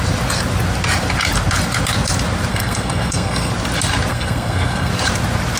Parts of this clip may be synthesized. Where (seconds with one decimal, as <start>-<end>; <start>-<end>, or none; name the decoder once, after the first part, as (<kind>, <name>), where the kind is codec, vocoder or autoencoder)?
2.5-3.5 (codec, SNAC); 4.1-4.9